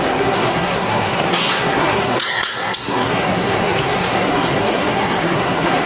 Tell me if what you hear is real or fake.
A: fake